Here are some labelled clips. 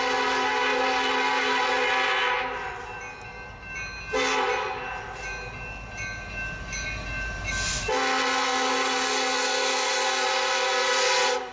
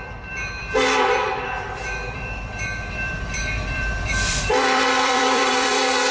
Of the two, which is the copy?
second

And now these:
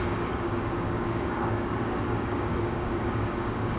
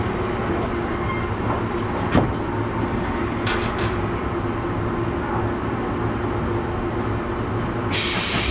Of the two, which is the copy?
first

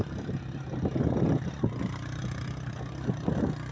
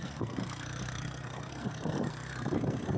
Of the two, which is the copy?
second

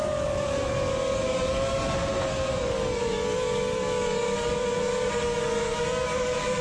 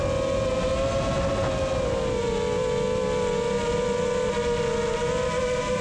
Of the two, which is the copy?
first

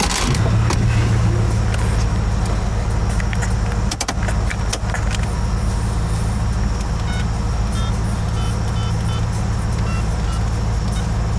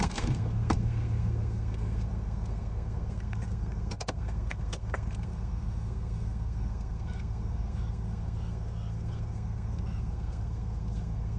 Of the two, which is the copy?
second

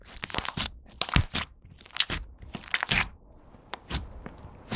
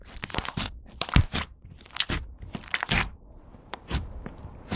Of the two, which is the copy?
second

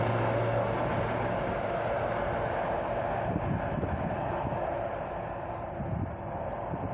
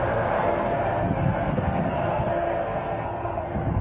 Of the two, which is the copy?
second